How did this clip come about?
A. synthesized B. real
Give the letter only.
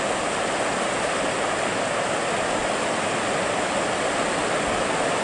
B